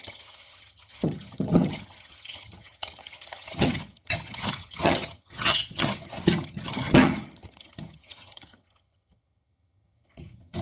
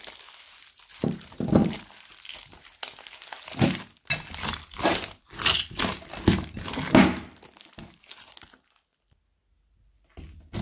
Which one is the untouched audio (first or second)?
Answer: second